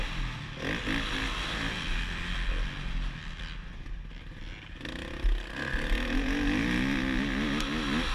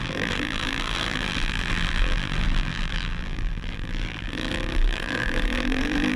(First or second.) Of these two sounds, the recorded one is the first